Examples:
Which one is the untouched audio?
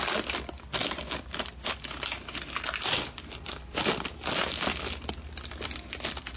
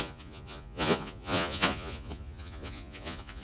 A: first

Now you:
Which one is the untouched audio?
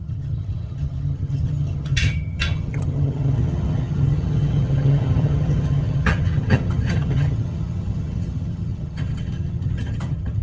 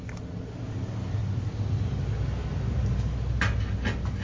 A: second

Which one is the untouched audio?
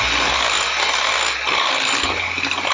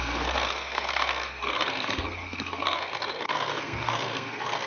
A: first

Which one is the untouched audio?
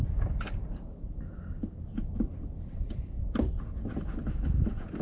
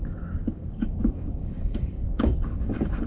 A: first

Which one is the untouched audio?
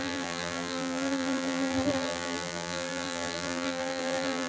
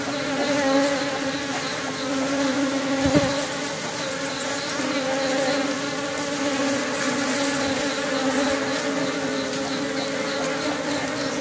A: second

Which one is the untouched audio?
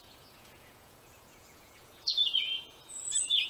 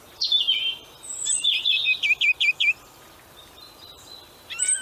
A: second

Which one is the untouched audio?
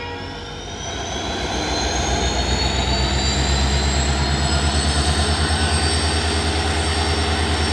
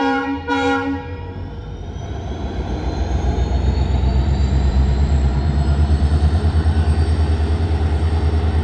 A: first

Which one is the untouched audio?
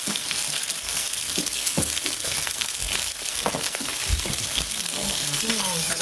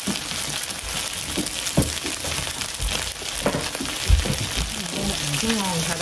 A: second